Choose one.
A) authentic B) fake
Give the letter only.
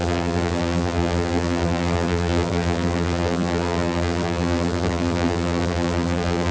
B